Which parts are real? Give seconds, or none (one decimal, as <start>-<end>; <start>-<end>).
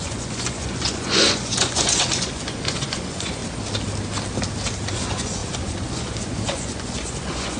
3.4-4.9